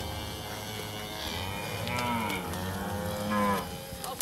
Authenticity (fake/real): real